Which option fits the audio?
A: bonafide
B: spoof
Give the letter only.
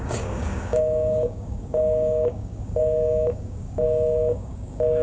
B